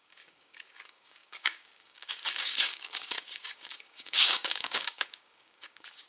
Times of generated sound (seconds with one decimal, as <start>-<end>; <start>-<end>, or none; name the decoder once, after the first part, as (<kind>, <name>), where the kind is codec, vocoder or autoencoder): 0.0-6.1 (codec, DAC)